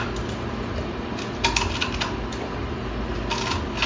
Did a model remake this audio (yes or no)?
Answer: no